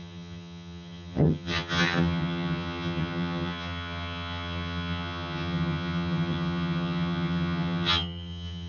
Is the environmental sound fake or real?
fake